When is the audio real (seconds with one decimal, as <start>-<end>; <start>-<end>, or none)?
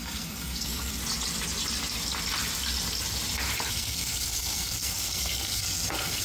1.0-3.7